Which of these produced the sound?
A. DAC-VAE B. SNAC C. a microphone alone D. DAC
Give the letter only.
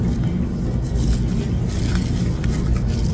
C